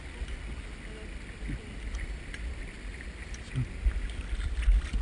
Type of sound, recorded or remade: recorded